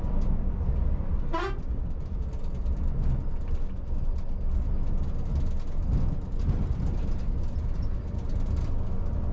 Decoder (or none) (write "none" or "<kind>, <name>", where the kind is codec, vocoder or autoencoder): none